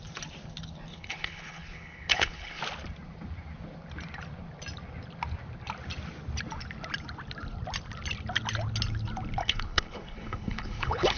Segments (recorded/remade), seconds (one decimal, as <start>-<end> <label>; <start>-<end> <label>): 0.0-0.9 recorded; 0.9-2.6 remade; 2.6-9.4 recorded; 9.4-11.2 remade